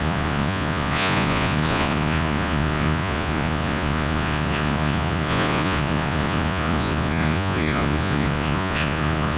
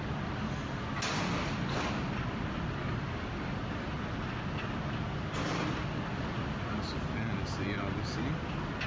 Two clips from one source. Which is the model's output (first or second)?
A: first